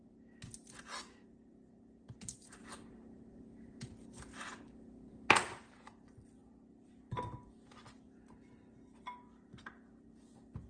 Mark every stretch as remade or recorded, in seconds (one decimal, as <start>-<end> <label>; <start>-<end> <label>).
0.0-10.7 recorded